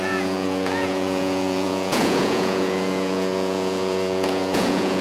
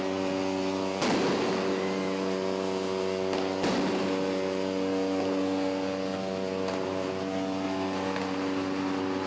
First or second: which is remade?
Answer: first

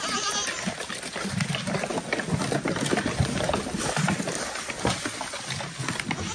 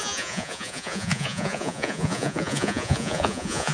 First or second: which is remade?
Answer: second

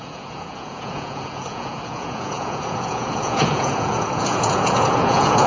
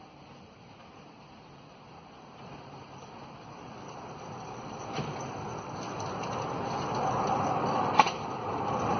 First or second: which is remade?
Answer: first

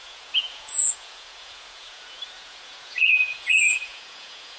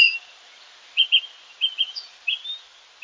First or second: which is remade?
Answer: first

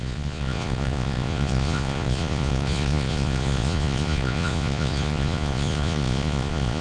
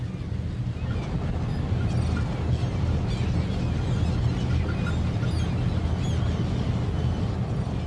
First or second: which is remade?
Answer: first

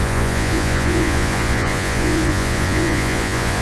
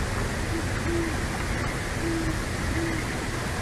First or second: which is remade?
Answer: first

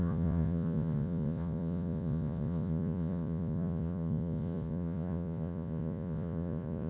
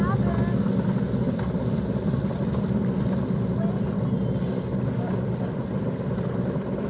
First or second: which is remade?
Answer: first